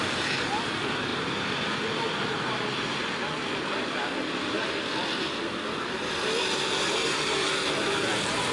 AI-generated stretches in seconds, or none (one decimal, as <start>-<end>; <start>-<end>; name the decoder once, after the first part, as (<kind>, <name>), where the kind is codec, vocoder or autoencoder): 0.0-8.5 (vocoder, BigVGAN v2)